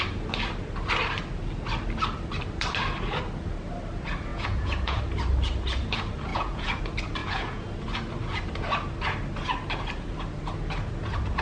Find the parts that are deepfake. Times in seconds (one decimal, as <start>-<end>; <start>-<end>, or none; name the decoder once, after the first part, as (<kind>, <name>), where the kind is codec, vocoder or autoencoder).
4.3-5.0 (vocoder, Vocos); 6.3-6.8; 7.2-7.7